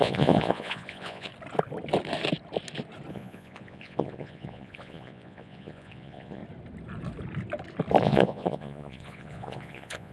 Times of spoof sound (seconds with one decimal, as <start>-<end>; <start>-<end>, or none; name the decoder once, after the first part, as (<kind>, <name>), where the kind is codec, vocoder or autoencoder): 0.0-1.3 (vocoder, Vocos); 3.1-6.4; 8.0-10.1